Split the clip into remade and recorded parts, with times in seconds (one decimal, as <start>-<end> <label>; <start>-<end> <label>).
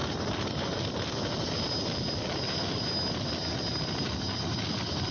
0.0-5.1 recorded